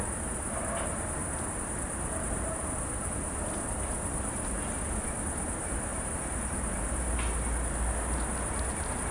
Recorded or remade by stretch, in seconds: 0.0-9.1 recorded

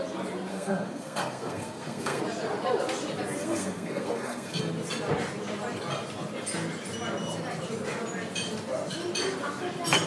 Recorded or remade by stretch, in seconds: 0.0-0.5 recorded; 0.5-2.2 remade; 2.2-3.4 recorded; 3.4-4.6 remade; 4.6-10.1 recorded

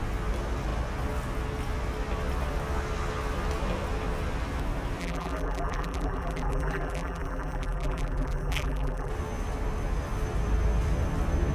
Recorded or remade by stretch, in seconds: 0.0-5.0 recorded; 5.0-9.1 remade; 9.1-11.5 recorded

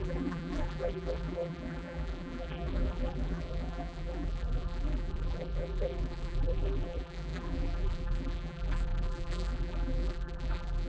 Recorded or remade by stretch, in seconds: 0.0-10.9 remade

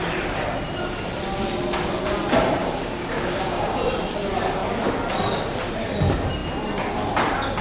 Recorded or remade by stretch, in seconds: 0.0-2.6 recorded; 2.6-3.8 remade; 3.8-7.6 recorded

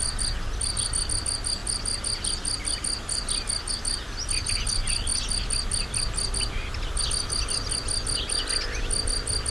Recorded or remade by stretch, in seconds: 0.0-9.5 recorded